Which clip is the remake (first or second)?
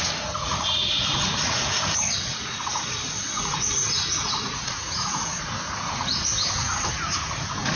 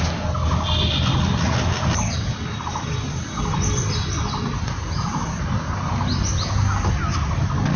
first